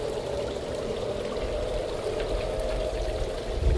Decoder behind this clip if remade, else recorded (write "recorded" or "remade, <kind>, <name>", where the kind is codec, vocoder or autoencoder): recorded